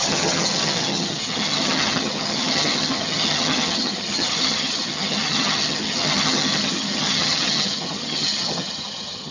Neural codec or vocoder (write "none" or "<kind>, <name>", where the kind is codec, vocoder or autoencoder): vocoder, HiFi-GAN